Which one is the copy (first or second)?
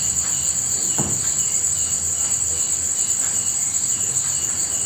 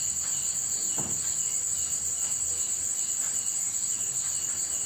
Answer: first